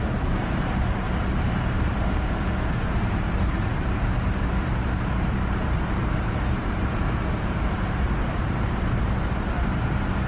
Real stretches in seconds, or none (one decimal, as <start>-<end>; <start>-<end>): none